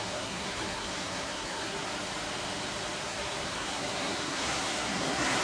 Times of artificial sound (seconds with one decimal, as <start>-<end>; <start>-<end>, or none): 0.0-1.9; 3.0-5.4